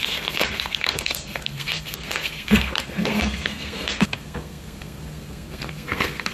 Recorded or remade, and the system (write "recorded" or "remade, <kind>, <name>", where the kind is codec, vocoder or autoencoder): remade, codec, SNAC